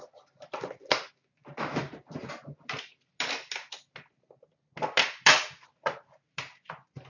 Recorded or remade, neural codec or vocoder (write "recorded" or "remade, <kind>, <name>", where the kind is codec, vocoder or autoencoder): recorded